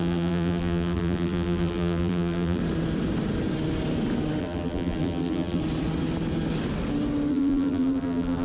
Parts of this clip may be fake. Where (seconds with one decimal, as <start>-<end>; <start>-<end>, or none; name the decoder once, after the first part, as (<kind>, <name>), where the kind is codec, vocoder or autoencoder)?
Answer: 0.0-2.6 (vocoder, BigVGAN v2); 4.4-5.6; 7.3-8.4